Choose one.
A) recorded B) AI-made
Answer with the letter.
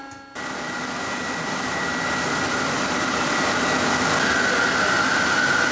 A